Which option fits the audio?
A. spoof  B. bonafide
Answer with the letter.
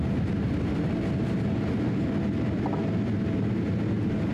B